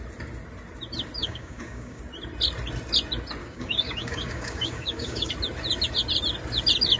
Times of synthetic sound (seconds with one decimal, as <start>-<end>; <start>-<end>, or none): 1.2-2.0; 3.4-5.3